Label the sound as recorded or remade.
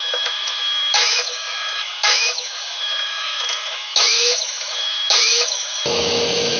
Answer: remade